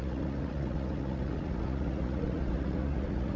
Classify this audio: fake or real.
fake